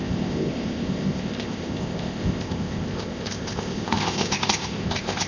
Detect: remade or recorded remade